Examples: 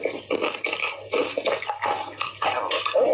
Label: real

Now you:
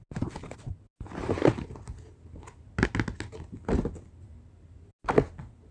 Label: real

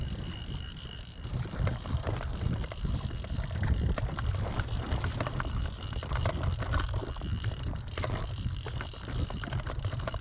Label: real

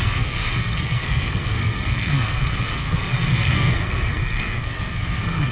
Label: fake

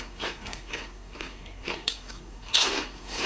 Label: fake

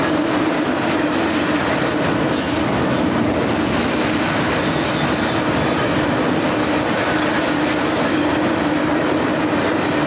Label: real